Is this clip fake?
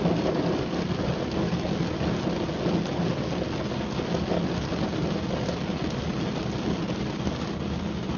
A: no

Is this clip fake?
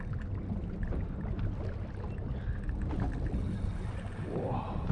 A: no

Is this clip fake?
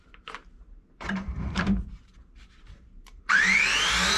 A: yes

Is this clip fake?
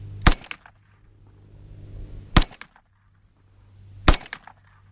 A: no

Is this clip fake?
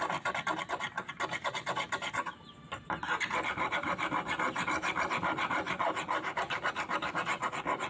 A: no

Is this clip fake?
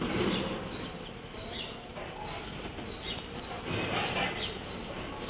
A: no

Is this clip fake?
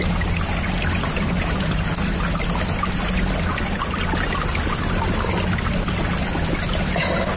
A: no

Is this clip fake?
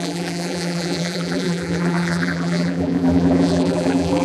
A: yes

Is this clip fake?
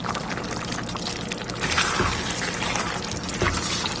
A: no